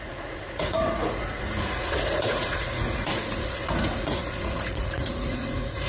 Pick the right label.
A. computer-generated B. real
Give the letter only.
A